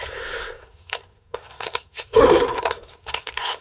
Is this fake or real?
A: fake